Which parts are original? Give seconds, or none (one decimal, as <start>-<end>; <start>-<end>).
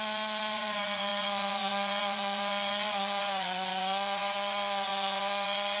none